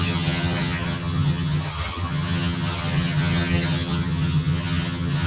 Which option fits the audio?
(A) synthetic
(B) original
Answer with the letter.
A